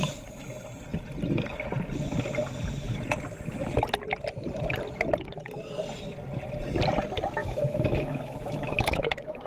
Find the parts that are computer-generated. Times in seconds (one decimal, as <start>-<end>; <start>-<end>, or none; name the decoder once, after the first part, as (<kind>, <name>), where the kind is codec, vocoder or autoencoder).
7.4-9.5 (autoencoder, DAC-VAE)